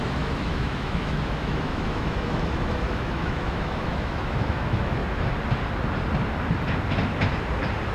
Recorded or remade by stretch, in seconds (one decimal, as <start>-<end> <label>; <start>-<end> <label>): 0.0-5.0 remade; 5.0-7.9 recorded